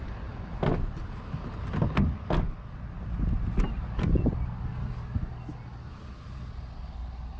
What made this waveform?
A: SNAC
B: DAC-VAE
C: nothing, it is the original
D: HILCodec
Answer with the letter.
C